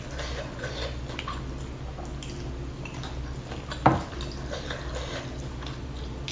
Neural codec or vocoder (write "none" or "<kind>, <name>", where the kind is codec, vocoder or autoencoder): none